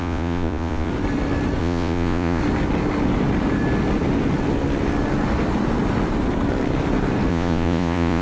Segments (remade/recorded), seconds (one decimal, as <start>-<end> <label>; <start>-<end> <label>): 0.0-0.9 remade; 0.9-1.6 recorded; 1.6-2.4 remade; 2.4-7.3 recorded; 7.3-8.2 remade

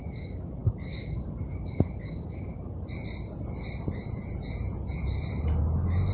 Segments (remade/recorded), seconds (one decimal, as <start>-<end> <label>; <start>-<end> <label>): 0.0-4.0 recorded; 4.0-5.0 remade; 5.0-6.1 recorded

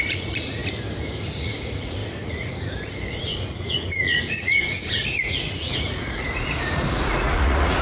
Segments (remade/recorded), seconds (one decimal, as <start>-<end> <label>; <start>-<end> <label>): 0.0-0.6 remade; 0.6-1.2 recorded; 1.2-7.8 remade

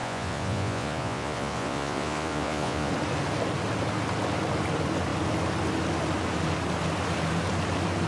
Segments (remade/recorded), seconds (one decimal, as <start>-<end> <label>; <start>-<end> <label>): 0.0-2.9 remade; 2.9-8.1 recorded

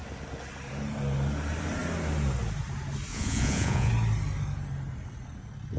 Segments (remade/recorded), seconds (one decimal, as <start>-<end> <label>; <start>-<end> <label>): 0.0-3.1 recorded; 3.1-3.9 remade; 3.9-5.8 recorded

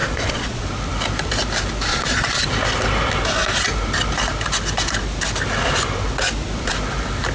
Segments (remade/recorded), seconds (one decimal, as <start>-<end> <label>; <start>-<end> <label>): 0.0-0.6 remade; 0.6-1.9 recorded; 1.9-2.4 remade; 2.4-7.3 recorded

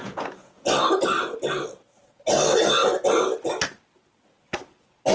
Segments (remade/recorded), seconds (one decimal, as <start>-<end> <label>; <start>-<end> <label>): 0.0-0.7 remade; 0.7-5.1 recorded

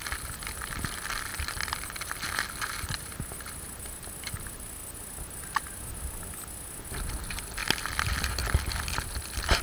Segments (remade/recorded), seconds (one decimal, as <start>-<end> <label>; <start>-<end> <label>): 0.0-9.6 recorded